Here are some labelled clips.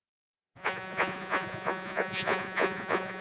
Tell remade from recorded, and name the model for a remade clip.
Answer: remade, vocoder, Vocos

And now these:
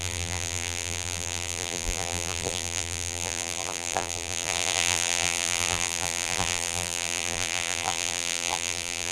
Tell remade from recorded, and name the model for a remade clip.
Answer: remade, vocoder, BigVGAN v2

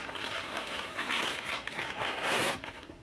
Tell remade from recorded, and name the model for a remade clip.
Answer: remade, codec, SNAC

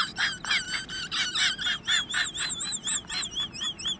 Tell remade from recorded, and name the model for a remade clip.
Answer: recorded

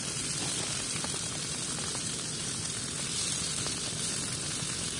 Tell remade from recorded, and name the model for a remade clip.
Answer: recorded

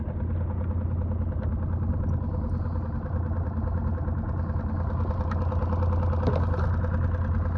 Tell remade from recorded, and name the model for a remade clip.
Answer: recorded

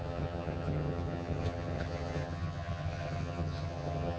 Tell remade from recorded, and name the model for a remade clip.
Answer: remade, vocoder, HiFi-GAN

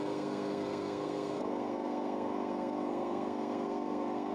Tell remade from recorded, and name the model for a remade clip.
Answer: remade, codec, SNAC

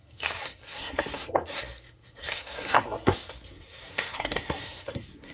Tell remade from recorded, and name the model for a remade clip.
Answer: remade, codec, SNAC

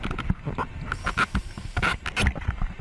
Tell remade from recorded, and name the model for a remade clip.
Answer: recorded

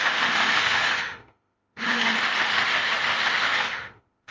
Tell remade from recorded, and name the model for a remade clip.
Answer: remade, autoencoder, DAC-VAE